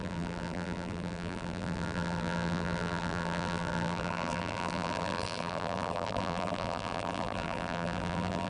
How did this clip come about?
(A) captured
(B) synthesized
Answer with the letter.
B